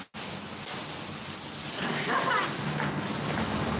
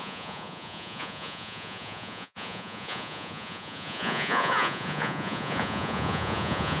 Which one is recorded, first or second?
first